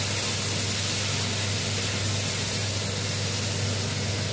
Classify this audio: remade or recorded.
recorded